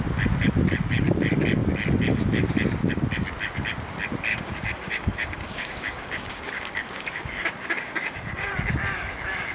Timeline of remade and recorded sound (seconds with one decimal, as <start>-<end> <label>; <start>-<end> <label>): 0.0-4.3 recorded; 4.3-8.5 remade; 8.5-9.5 recorded